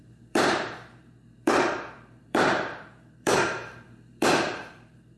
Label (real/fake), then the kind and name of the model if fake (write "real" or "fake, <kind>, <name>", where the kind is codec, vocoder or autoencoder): fake, vocoder, BigVGAN v2